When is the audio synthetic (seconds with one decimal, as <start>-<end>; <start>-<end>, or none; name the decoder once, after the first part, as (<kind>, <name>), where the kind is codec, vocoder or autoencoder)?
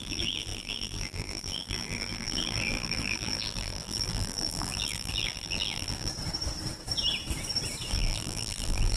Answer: 0.0-6.1 (vocoder, BigVGAN v2); 7.9-9.0